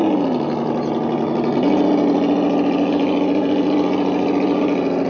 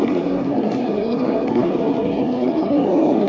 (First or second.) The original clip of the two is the first